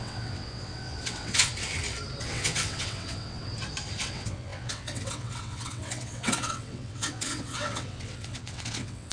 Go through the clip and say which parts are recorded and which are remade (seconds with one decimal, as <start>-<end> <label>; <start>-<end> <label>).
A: 0.0-1.5 remade; 1.5-2.2 recorded; 2.2-3.5 remade; 3.5-4.0 recorded; 4.0-9.1 remade